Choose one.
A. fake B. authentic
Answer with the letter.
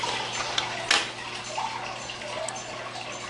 B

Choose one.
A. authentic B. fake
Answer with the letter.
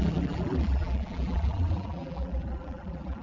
B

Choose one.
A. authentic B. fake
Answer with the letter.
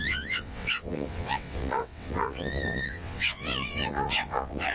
B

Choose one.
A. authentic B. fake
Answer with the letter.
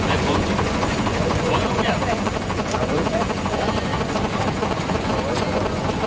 B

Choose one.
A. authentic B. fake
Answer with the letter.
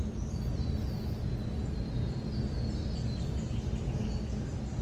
A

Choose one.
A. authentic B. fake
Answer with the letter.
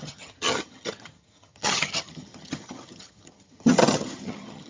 B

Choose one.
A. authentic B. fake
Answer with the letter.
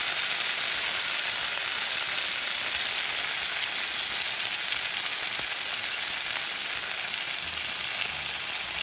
A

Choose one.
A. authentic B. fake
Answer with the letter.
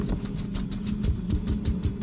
A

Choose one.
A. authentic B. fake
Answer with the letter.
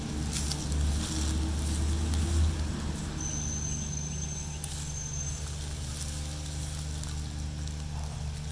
A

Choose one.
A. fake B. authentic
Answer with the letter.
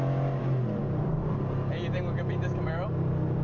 B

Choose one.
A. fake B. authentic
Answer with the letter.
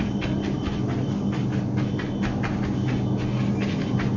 B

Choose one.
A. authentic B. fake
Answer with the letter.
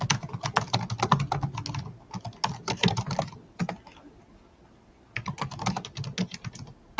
A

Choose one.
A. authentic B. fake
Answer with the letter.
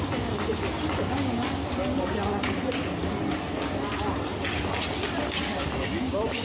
A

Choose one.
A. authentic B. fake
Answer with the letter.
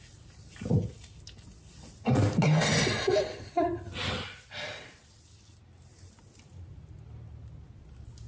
A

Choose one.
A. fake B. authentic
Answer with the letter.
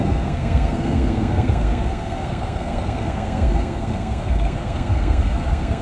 A